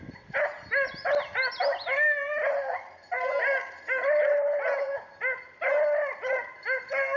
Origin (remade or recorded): recorded